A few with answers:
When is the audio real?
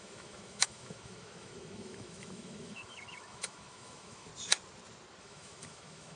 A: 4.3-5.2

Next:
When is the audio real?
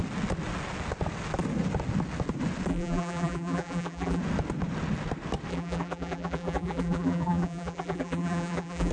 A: 0.0-2.7; 4.2-5.5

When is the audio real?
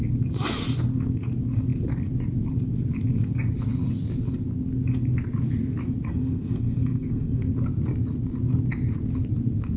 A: 0.0-6.1; 7.5-9.8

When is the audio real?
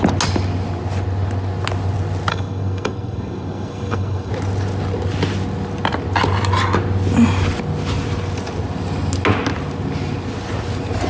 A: 0.0-2.3; 4.3-11.1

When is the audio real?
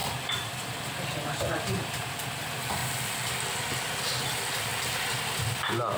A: 0.0-4.7; 5.4-6.0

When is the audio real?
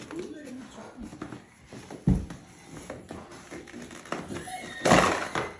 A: 0.0-5.6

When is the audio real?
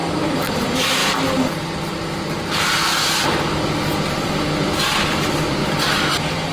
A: 0.0-0.5; 1.0-4.6; 5.6-6.1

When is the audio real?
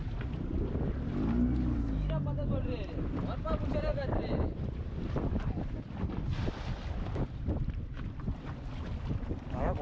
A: 0.0-3.9; 7.7-9.8